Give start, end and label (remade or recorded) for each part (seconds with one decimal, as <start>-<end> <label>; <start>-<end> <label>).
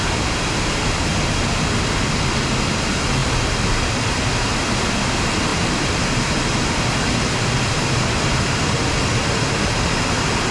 0.0-10.5 recorded